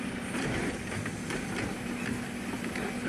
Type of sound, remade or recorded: recorded